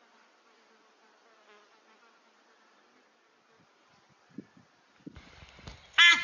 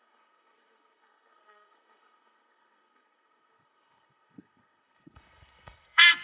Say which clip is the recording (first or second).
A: first